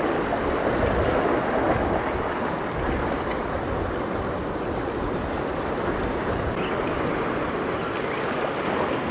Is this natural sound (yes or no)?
yes